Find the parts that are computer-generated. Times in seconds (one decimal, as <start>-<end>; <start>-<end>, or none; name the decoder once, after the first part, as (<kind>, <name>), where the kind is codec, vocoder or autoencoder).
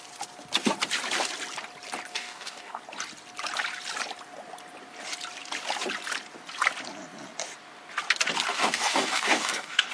2.1-2.8 (codec, DAC); 8.5-9.9